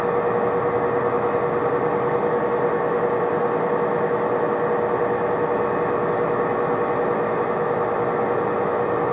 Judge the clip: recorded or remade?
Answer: recorded